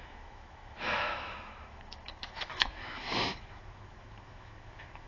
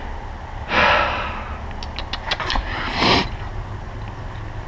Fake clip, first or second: first